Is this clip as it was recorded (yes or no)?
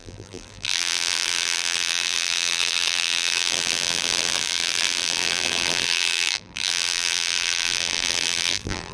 no